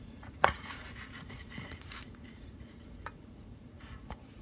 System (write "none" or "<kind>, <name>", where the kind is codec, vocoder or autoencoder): vocoder, Vocos